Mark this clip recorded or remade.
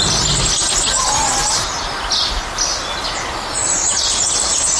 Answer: recorded